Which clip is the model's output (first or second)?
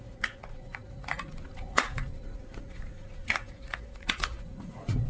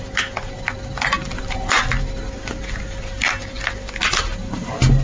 first